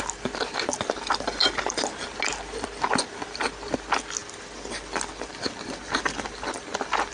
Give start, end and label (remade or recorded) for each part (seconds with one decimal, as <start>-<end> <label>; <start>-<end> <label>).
0.0-1.4 recorded; 1.4-2.0 remade; 2.0-4.2 recorded; 4.2-7.1 remade